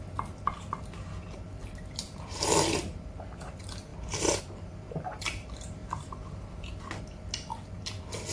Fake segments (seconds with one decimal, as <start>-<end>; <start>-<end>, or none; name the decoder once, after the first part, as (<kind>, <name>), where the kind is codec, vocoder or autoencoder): none